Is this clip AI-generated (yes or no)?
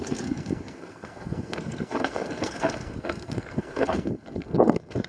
yes